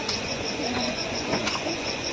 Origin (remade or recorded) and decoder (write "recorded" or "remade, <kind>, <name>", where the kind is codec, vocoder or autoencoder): remade, vocoder, Vocos